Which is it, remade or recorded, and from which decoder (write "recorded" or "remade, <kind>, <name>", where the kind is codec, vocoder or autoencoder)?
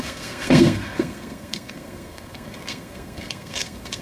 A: remade, codec, SNAC